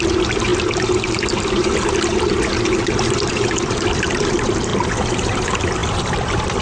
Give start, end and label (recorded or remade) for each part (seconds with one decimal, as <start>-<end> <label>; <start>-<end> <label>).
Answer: 0.0-0.5 remade; 0.5-3.3 recorded; 3.3-4.7 remade; 4.7-5.2 recorded; 5.2-6.6 remade

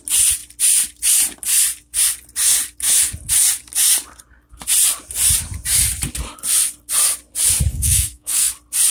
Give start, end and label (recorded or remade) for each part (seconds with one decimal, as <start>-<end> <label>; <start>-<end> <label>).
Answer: 0.0-7.7 recorded; 7.7-8.5 remade; 8.5-8.9 recorded